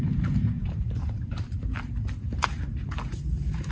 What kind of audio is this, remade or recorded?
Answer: remade